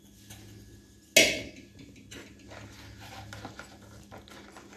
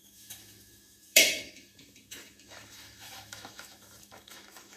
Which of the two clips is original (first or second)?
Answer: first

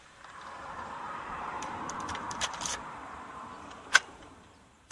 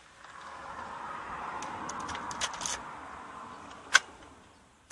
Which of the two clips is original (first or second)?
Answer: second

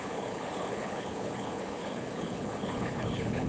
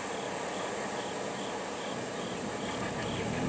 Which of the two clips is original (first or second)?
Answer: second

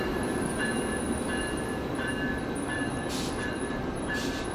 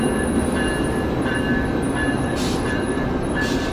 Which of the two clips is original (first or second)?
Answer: second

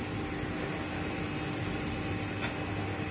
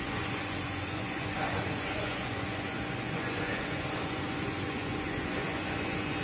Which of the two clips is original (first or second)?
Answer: first